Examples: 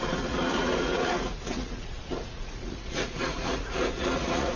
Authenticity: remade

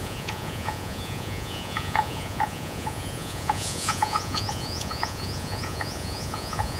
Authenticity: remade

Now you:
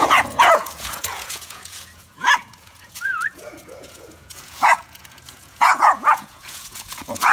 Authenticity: remade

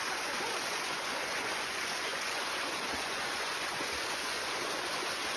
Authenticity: remade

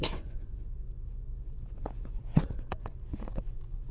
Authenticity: remade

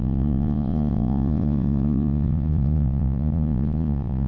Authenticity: remade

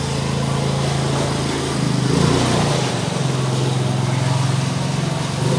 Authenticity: recorded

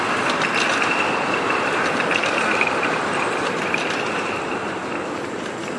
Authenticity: recorded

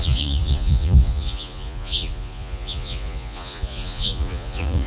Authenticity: remade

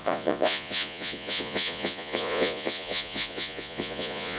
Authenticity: remade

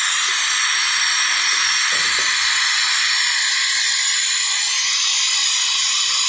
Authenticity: recorded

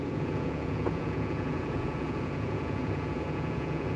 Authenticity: remade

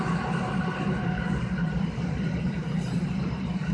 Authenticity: recorded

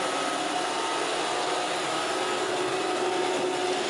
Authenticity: recorded